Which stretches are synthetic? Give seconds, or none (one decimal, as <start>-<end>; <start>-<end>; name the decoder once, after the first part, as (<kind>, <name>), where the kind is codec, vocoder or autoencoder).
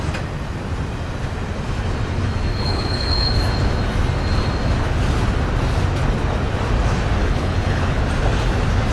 2.5-3.3 (codec, HILCodec); 7.2-8.0